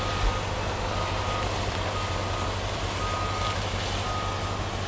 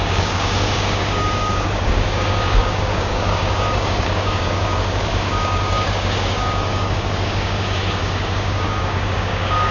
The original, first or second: first